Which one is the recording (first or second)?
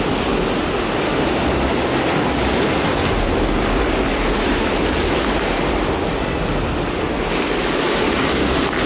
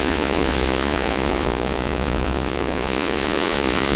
first